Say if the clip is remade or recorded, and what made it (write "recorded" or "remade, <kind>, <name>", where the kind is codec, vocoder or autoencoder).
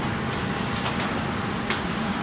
recorded